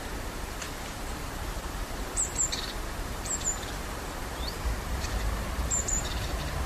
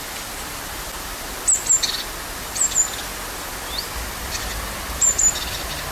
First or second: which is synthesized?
first